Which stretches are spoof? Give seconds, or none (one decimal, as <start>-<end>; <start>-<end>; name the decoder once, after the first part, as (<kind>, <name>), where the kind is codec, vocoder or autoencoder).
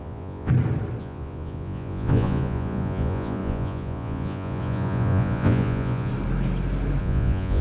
0.0-0.5 (vocoder, Vocos); 1.0-6.1; 7.0-7.6